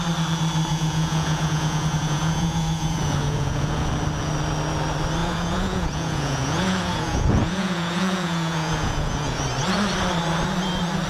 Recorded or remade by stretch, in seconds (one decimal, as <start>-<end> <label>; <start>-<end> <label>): 0.0-0.7 recorded; 0.7-3.9 remade; 3.9-5.2 recorded; 5.2-9.4 remade; 9.4-11.1 recorded